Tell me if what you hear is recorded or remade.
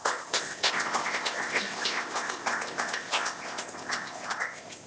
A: remade